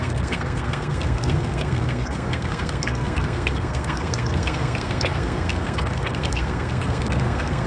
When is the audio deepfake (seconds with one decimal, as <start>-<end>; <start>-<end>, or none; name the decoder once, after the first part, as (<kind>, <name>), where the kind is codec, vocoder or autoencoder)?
0.0-7.7 (codec, SNAC)